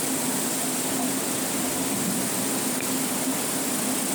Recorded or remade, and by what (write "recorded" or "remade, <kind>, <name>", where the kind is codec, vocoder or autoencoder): recorded